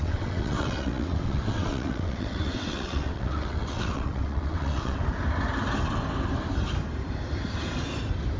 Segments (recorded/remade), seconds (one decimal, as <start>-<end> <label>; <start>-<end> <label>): 0.0-5.0 remade; 5.0-8.4 recorded